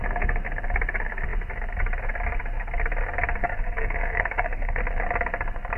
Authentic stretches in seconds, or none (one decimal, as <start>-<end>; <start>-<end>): 0.0-3.4; 4.8-5.8

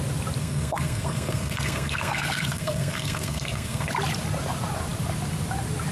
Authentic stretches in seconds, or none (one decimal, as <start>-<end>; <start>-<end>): 0.0-0.4; 3.9-5.9

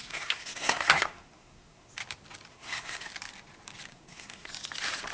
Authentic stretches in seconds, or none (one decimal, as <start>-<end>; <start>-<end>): 1.9-2.5; 3.1-3.9; 4.5-5.1

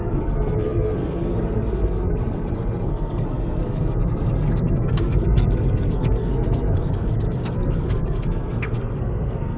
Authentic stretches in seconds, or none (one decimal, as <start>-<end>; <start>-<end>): none

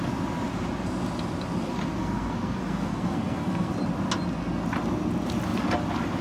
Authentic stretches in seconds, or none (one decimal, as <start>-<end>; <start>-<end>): 0.0-2.0; 3.7-6.2

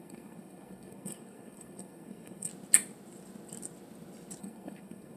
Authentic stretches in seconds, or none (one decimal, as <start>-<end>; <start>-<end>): 2.5-4.4

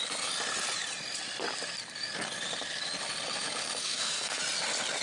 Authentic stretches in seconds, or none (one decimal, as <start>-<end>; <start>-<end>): 0.0-3.8; 4.4-5.0